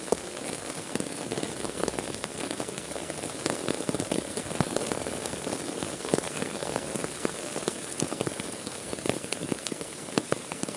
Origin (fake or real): fake